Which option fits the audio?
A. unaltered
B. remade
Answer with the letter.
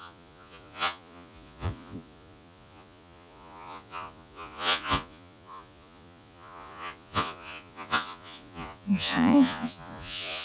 B